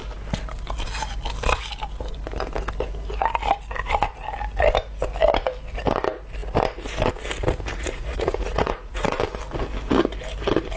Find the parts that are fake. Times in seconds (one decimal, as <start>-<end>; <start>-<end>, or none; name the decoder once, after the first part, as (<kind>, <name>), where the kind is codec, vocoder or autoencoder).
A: 7.7-9.2 (vocoder, Vocos)